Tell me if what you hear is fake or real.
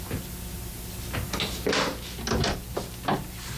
real